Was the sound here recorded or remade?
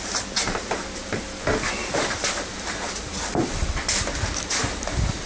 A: recorded